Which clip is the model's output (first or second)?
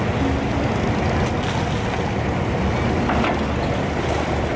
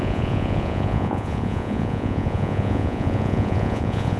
second